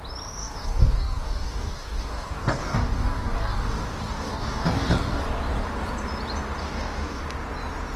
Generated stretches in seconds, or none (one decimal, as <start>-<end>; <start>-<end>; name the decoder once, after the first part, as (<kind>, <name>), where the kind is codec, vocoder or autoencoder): 0.4-5.2 (codec, DAC); 6.6-7.2